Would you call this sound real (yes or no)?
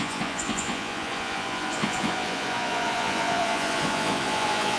no